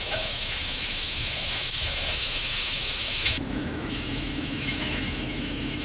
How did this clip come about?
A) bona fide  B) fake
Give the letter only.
B